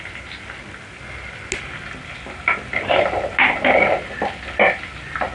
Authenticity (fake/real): real